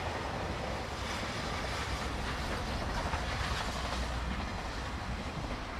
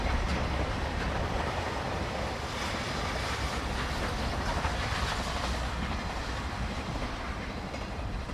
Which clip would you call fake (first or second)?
second